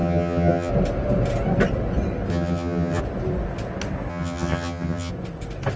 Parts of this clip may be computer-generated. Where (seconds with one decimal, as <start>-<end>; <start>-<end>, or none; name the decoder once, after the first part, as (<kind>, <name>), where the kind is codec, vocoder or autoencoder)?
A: 0.0-0.7 (vocoder, HiFi-GAN); 2.3-3.0; 4.1-5.1